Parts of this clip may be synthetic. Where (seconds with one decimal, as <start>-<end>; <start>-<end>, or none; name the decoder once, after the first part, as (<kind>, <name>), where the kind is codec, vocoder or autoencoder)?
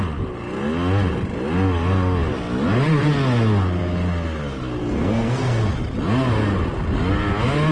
4.8-5.7 (codec, SNAC)